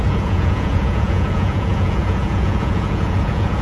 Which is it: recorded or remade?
remade